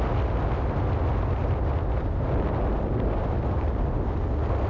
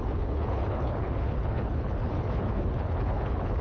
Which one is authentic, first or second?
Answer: first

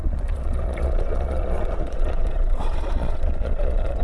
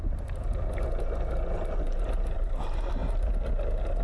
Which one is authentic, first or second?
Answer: second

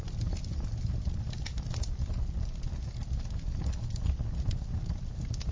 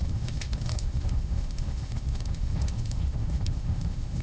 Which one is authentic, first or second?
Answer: first